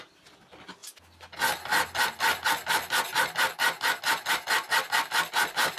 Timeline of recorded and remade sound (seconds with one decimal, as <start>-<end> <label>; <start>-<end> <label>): 0.0-5.8 recorded